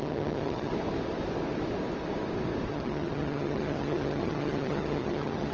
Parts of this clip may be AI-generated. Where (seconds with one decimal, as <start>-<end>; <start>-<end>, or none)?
0.0-0.7; 2.7-5.5